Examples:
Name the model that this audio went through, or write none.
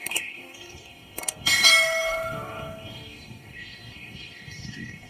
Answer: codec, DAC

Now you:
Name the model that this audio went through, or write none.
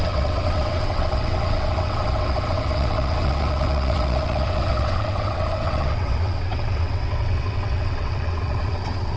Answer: vocoder, WaveNeXt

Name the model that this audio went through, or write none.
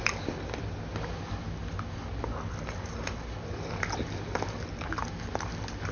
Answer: none